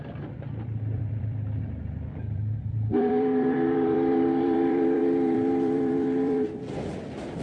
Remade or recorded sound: remade